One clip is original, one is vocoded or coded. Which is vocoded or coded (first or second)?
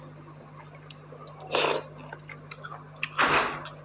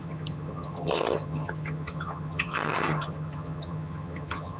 second